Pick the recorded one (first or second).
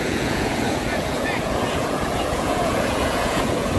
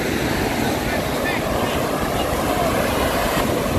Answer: second